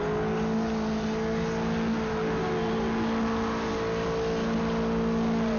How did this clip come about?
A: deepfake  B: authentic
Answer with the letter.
B